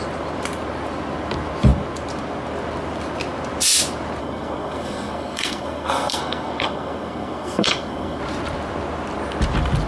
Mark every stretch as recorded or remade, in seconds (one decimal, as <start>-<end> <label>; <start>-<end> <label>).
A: 0.0-4.2 recorded; 4.2-8.2 remade; 8.2-9.9 recorded